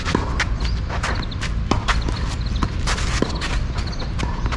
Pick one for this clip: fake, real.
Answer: real